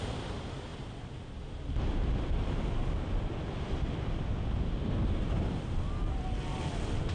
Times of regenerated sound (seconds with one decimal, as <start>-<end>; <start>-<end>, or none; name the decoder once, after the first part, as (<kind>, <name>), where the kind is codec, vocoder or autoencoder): none